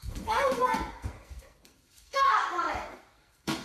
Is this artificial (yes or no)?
yes